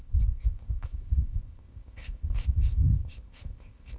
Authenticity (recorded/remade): remade